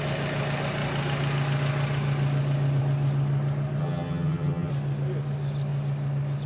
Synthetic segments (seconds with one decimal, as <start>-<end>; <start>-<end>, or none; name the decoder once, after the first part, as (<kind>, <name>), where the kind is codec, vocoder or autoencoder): 3.8-4.7 (vocoder, HiFi-GAN)